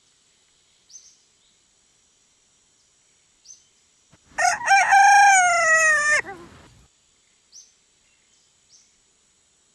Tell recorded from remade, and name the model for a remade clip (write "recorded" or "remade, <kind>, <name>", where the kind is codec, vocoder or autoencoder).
recorded